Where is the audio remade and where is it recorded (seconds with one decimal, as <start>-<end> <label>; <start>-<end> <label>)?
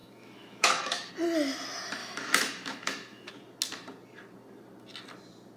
0.0-1.1 remade; 1.1-2.0 recorded; 2.0-3.3 remade; 3.3-5.6 recorded